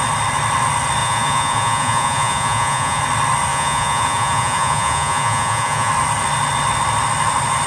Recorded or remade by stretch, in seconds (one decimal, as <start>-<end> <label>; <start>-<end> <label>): 0.0-1.0 recorded; 1.0-3.0 remade; 3.0-3.5 recorded; 3.5-5.9 remade; 5.9-7.7 recorded